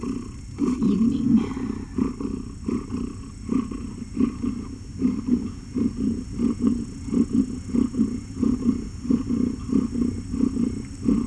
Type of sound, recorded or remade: recorded